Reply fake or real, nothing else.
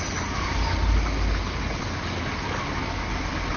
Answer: real